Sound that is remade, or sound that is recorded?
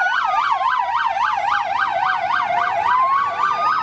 recorded